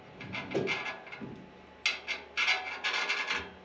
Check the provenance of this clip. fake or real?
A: real